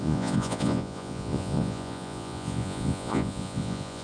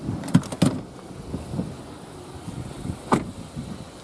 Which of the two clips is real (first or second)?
second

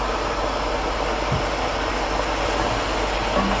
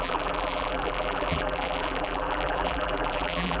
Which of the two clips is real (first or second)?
first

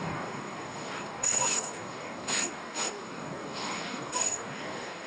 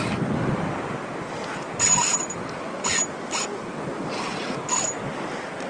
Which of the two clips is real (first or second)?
second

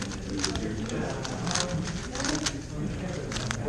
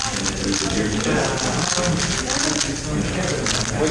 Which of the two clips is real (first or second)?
second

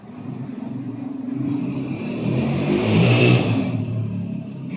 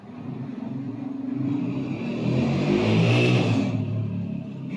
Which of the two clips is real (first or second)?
second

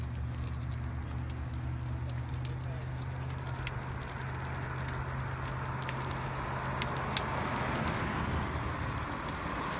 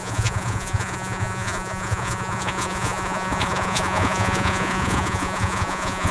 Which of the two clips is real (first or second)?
first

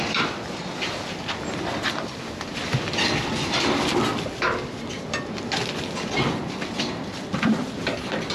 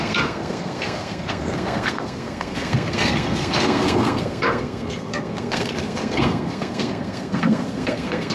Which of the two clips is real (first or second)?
first